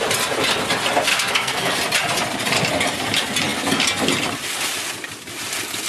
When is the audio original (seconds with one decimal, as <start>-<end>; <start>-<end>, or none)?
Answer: 0.0-1.1; 1.7-5.9